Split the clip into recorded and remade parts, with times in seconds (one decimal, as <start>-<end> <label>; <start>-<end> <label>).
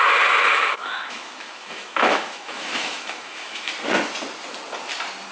0.0-0.5 recorded; 0.5-3.7 remade; 3.7-5.3 recorded